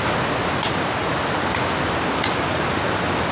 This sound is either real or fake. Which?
real